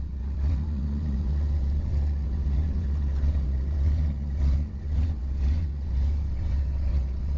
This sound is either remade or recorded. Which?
remade